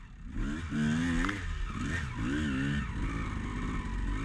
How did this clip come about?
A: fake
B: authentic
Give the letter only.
B